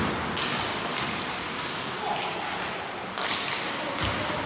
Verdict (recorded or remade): recorded